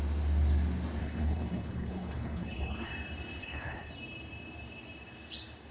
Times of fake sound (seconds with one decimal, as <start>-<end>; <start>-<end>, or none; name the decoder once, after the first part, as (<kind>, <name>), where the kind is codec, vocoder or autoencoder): 1.0-2.9 (codec, HILCodec); 3.4-3.9